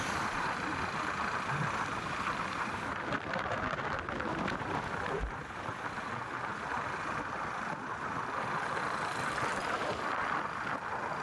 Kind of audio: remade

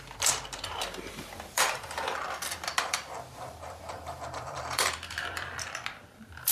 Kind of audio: remade